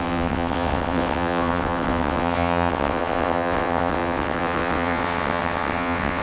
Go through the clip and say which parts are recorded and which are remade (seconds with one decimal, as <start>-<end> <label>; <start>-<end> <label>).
0.0-6.2 remade